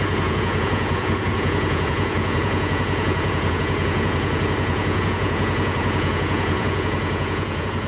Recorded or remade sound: remade